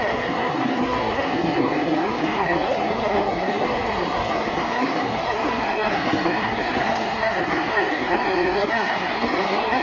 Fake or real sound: fake